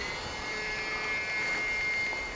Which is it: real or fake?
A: real